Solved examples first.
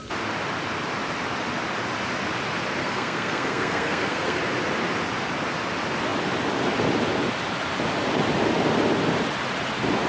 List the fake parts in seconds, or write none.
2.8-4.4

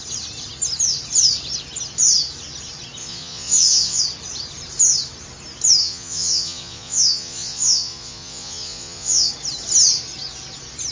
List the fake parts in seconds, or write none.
3.0-4.0; 5.8-9.3